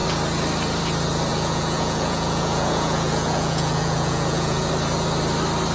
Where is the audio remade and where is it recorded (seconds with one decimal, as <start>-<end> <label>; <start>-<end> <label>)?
0.0-1.3 recorded; 1.3-4.7 remade; 4.7-5.7 recorded